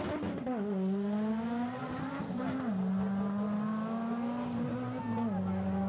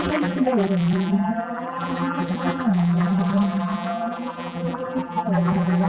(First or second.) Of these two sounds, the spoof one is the second